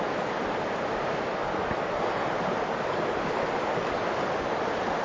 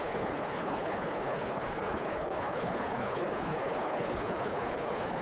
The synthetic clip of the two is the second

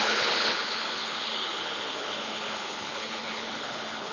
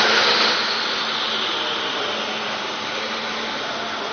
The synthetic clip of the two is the first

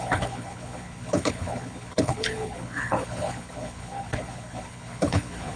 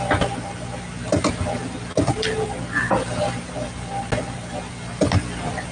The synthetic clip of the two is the first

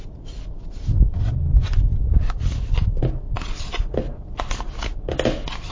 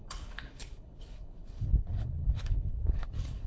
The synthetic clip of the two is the second